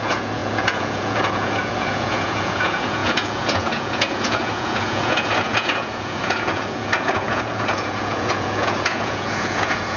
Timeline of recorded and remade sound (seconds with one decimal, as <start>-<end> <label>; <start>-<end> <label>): 0.0-10.0 remade